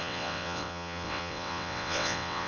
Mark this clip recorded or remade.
remade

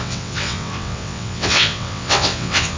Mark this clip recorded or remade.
remade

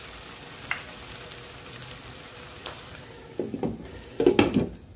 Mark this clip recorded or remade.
recorded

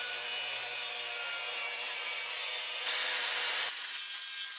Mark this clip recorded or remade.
recorded